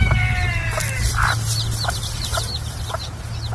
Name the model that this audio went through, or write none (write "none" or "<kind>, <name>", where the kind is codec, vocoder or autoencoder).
none